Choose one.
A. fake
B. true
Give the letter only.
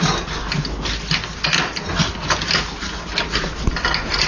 B